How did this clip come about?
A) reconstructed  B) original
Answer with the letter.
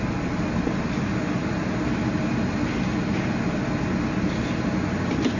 B